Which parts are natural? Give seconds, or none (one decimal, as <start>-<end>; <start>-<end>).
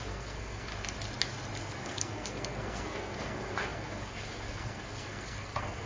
0.7-1.6